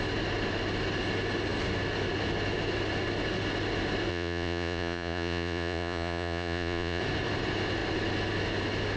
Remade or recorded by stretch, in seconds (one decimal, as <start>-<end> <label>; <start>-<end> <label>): 0.0-4.1 recorded; 4.1-7.0 remade; 7.0-9.0 recorded

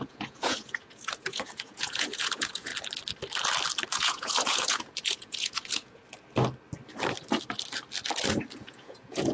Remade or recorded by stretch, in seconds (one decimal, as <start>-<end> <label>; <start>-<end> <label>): 0.0-2.7 remade; 2.7-3.9 recorded; 3.9-6.0 remade; 6.0-8.6 recorded; 8.6-9.3 remade

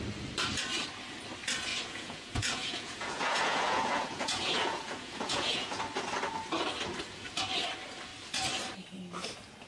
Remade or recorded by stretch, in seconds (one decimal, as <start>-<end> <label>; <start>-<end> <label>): 0.0-1.7 recorded; 1.7-5.8 remade; 5.8-9.7 recorded

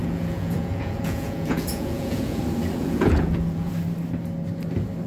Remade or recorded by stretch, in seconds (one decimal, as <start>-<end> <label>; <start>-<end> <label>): 0.0-2.4 remade; 2.4-2.8 recorded; 2.8-3.7 remade; 3.7-5.1 recorded

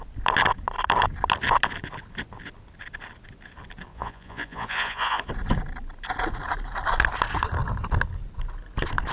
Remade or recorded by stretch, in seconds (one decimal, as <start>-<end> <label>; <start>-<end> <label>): 0.0-3.9 recorded; 3.9-5.3 remade; 5.3-9.1 recorded